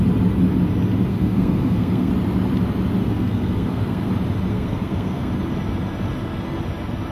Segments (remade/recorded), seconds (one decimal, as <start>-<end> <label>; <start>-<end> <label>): 0.0-1.1 recorded; 1.1-2.1 remade; 2.1-3.0 recorded; 3.0-4.1 remade; 4.1-4.5 recorded; 4.5-5.3 remade; 5.3-7.1 recorded